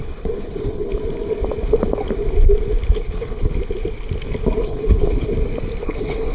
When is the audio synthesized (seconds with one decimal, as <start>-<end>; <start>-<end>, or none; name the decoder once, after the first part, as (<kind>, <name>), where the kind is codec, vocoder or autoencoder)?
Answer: 0.0-0.9 (codec, HILCodec); 2.9-3.5; 4.6-5.3; 5.8-6.3